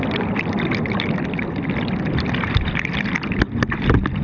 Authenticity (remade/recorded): recorded